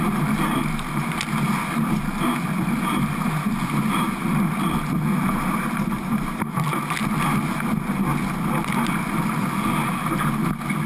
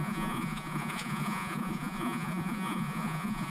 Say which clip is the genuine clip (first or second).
first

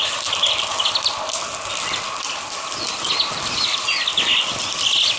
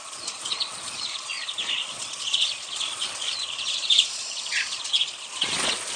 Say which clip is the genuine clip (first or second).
first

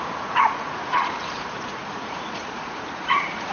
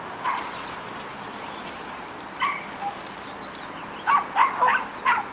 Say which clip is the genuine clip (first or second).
second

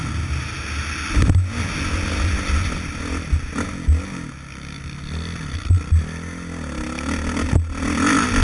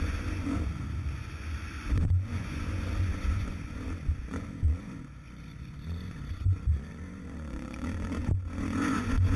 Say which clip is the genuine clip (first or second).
first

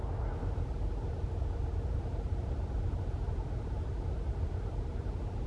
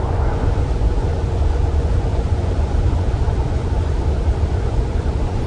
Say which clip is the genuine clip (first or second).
first